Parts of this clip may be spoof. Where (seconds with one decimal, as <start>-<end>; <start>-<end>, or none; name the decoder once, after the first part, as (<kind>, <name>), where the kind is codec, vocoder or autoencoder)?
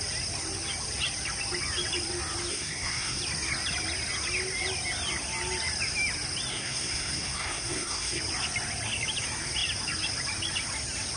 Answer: 2.5-3.2 (codec, SNAC); 6.5-8.2